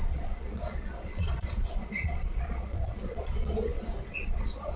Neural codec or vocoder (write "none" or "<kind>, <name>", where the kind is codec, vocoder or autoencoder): vocoder, Vocos